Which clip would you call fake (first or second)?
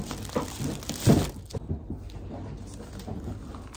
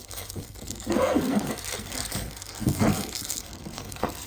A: second